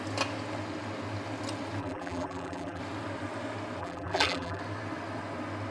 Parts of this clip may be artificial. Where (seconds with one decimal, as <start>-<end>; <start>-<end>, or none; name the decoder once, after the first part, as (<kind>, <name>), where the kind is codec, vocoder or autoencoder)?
1.8-2.8 (vocoder, BigVGAN v2); 3.8-4.6

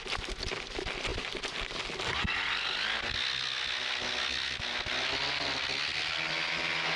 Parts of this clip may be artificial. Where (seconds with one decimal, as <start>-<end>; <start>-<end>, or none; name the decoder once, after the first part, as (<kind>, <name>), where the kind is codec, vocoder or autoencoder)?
none

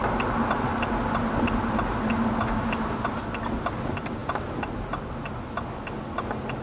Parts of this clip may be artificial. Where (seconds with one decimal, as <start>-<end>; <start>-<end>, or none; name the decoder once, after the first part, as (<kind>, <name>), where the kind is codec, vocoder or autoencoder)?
none